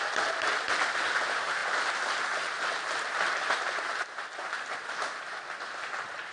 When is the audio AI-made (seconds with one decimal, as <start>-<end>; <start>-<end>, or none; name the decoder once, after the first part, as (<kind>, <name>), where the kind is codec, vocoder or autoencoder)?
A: none